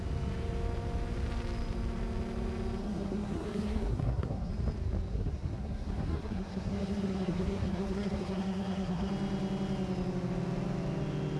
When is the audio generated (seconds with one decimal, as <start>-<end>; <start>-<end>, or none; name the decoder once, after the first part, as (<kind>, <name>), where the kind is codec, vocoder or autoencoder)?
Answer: 2.8-4.5 (codec, SNAC); 5.1-9.1